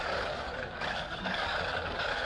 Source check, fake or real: fake